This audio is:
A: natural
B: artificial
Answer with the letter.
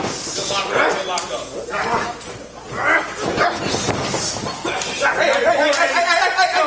A